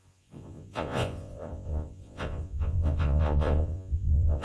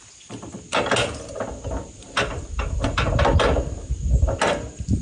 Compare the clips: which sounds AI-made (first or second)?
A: first